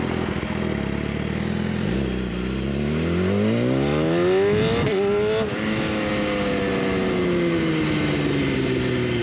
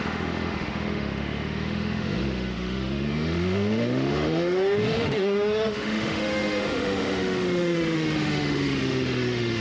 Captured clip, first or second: first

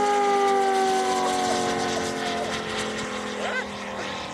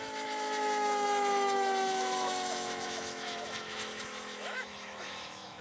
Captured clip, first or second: first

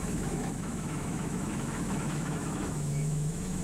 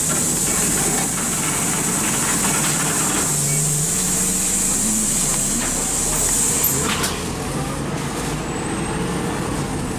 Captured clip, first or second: second